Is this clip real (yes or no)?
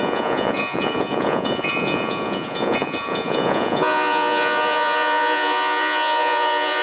no